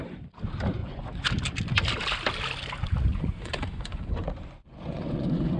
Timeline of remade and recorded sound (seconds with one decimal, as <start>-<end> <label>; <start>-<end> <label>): 0.0-0.8 recorded; 0.8-1.3 remade; 1.3-3.1 recorded; 3.1-5.6 remade